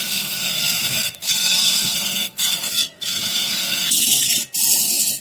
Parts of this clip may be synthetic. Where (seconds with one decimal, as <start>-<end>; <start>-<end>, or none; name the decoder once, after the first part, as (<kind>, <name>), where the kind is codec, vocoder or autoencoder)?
0.0-4.3 (codec, SNAC); 4.8-5.2